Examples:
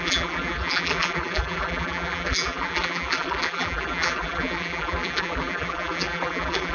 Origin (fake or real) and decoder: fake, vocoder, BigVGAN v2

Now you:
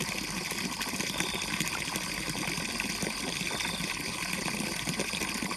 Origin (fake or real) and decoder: real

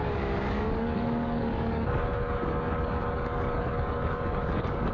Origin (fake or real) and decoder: fake, codec, DAC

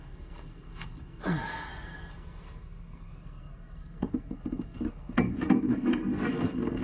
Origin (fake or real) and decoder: fake, codec, SNAC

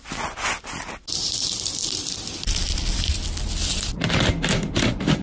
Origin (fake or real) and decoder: real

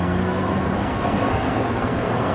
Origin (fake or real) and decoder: fake, codec, SNAC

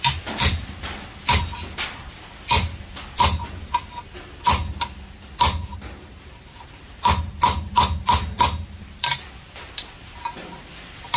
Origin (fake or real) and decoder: real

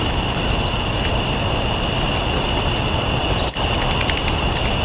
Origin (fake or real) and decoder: real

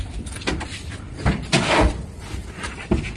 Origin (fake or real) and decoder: fake, vocoder, BigVGAN v2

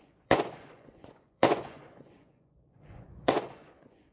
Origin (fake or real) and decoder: fake, vocoder, Vocos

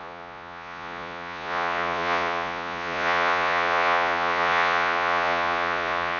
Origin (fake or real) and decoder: fake, vocoder, Vocos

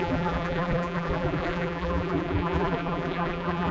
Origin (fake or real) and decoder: fake, vocoder, BigVGAN v2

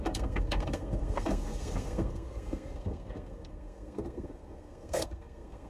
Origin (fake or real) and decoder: fake, codec, SNAC